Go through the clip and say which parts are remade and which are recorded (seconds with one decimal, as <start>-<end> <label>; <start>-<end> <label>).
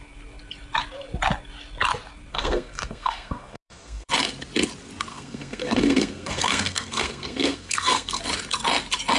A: 0.0-2.3 recorded; 2.3-4.1 remade; 4.1-5.1 recorded; 5.1-8.2 remade; 8.2-9.2 recorded